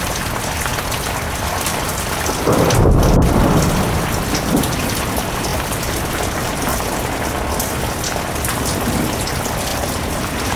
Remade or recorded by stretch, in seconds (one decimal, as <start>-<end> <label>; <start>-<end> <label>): 0.0-0.7 remade; 0.7-1.3 recorded; 1.3-6.7 remade; 6.7-7.5 recorded; 7.5-10.6 remade